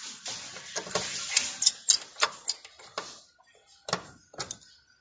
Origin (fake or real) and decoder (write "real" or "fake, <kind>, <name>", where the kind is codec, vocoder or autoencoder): real